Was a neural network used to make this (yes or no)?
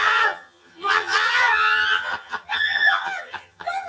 yes